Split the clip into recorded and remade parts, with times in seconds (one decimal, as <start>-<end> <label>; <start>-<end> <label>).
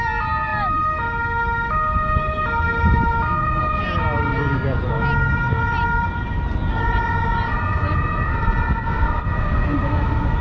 0.0-10.4 recorded